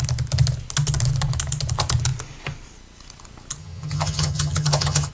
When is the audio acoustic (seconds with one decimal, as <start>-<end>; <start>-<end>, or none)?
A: 0.0-3.6